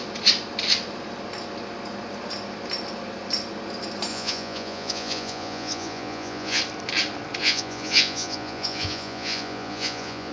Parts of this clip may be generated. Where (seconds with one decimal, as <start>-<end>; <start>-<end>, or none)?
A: 4.1-6.6; 7.4-10.3